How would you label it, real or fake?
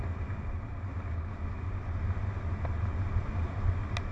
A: real